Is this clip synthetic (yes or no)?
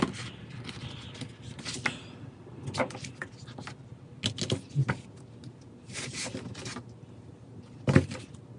no